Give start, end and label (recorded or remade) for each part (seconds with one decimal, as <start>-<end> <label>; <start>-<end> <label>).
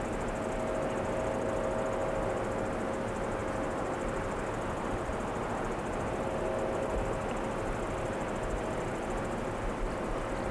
0.0-10.5 recorded